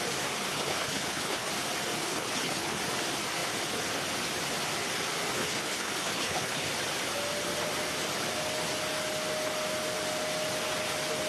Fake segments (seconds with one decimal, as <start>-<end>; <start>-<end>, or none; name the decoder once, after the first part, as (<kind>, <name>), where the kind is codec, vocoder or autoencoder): 0.5-1.5 (codec, HILCodec); 2.0-2.8; 5.4-6.7